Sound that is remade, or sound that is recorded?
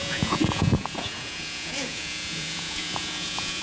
remade